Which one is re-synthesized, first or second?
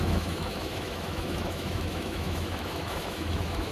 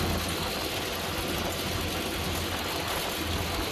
first